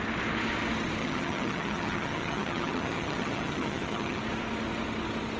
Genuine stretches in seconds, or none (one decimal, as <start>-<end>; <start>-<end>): 0.0-1.0; 4.2-5.4